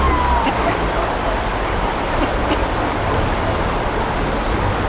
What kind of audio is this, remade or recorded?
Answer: recorded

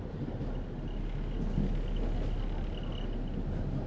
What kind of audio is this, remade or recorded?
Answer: recorded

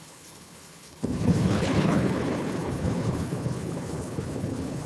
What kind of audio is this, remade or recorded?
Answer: remade